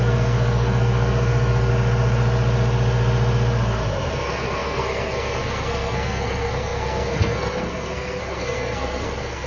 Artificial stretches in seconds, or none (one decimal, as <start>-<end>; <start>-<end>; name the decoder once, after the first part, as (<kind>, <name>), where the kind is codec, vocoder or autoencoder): 0.0-1.7 (codec, SNAC); 4.1-9.5